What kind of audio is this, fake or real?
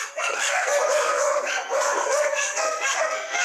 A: fake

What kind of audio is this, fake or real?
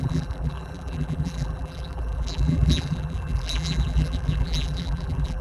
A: fake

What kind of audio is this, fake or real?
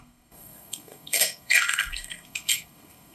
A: fake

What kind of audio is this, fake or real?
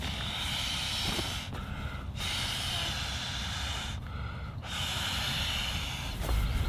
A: real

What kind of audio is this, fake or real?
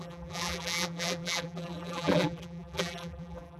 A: fake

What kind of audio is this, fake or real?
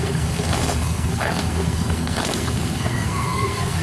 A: fake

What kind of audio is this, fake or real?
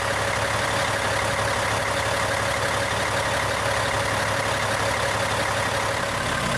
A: real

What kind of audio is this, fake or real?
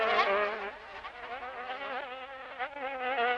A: real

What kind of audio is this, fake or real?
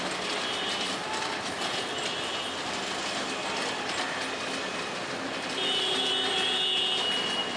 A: real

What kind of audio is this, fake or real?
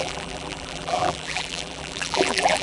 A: fake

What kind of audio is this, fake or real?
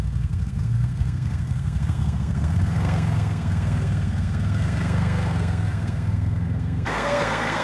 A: fake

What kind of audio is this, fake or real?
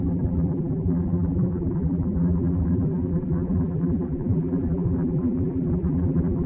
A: fake